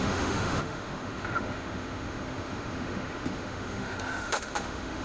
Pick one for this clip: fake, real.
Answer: fake